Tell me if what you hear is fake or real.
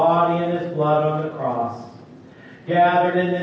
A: real